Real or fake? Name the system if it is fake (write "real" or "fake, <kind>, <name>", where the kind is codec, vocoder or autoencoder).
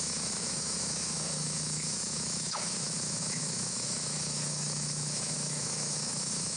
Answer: fake, autoencoder, DAC-VAE